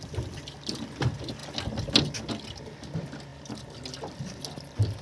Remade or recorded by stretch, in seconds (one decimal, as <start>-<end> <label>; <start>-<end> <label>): 0.0-5.0 recorded